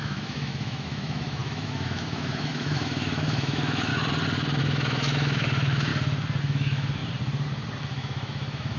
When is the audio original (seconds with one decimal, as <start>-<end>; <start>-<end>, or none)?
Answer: 3.9-4.6; 5.9-6.4; 7.0-7.8

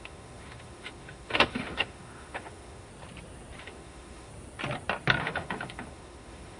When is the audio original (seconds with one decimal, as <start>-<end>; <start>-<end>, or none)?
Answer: 2.9-3.6; 4.3-5.2

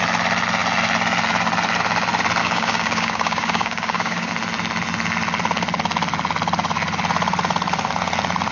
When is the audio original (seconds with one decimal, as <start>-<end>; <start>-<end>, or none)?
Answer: 0.0-2.4; 4.3-8.5

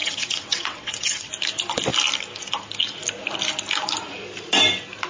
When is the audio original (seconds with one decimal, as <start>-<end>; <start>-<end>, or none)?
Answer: 1.3-5.1

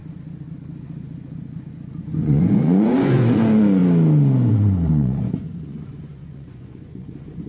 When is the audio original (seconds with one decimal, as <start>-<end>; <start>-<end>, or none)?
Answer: 0.0-2.0; 3.8-4.5

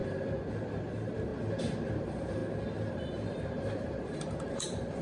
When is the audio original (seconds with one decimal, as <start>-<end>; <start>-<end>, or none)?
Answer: 0.0-0.8; 1.3-1.9; 2.4-2.9